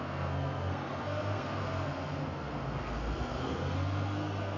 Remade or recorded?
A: remade